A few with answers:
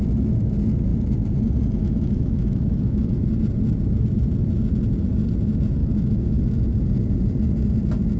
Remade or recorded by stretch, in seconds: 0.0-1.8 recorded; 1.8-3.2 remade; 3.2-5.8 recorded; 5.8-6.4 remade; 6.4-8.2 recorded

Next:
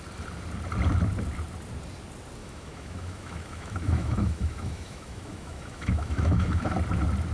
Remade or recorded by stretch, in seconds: 0.0-2.4 recorded; 2.4-6.7 remade; 6.7-7.3 recorded

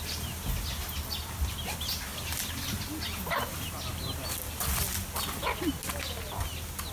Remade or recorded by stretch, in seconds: 0.0-6.9 recorded